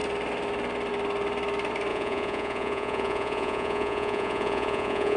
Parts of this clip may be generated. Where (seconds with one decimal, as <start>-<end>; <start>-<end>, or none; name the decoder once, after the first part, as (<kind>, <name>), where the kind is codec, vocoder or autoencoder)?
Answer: 1.9-5.2 (vocoder, Vocos)